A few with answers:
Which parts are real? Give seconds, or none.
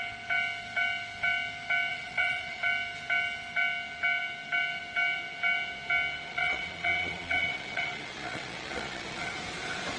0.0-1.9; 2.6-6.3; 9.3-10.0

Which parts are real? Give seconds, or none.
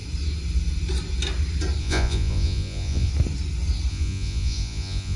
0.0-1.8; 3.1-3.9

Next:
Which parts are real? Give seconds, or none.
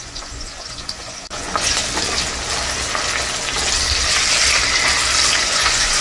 1.8-5.4